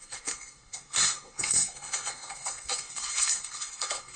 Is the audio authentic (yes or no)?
no